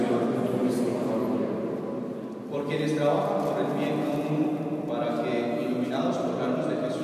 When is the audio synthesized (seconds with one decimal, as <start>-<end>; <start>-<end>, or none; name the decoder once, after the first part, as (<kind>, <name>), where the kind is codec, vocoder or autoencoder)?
none